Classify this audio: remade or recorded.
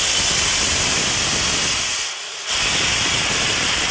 recorded